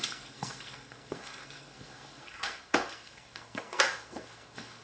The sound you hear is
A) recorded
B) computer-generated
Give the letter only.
B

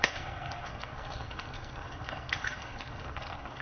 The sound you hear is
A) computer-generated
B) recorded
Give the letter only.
A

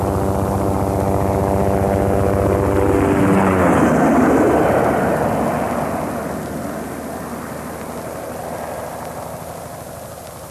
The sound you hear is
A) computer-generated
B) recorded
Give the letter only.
B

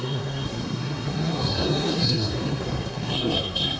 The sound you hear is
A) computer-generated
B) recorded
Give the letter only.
A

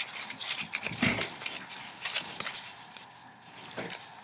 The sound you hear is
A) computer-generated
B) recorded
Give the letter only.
B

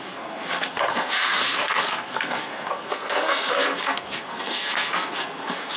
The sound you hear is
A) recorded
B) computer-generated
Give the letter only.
B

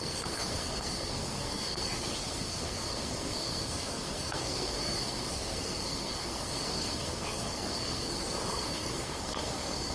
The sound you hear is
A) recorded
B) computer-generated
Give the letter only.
B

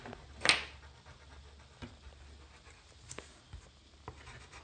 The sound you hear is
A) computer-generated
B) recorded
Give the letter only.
B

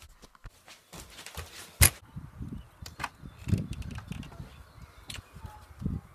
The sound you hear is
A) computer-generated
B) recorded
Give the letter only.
B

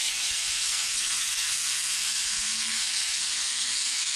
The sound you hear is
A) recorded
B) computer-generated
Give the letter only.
B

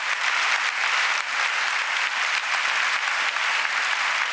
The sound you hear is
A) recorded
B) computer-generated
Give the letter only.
A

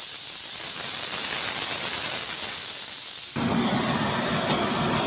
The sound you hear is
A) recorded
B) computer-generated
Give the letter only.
A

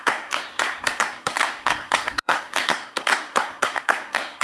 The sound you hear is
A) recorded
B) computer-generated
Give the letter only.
B